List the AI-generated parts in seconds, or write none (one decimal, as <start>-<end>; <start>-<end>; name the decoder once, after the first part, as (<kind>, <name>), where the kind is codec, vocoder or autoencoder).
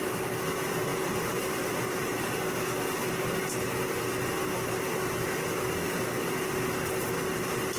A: none